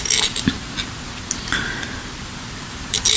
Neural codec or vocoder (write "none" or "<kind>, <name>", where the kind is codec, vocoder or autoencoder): none